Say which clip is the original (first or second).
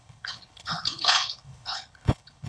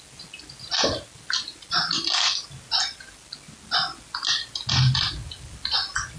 second